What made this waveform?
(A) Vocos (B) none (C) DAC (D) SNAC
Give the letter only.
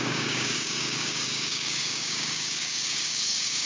C